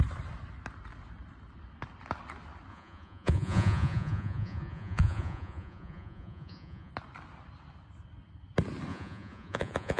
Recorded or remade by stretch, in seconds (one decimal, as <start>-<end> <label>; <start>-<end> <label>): 0.0-2.7 recorded; 2.7-6.9 remade; 6.9-8.9 recorded; 8.9-10.0 remade